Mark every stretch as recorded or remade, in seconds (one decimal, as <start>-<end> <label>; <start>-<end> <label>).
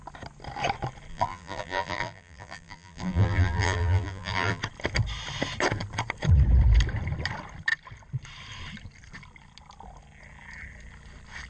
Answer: 0.0-1.1 recorded; 1.1-4.6 remade; 4.6-11.5 recorded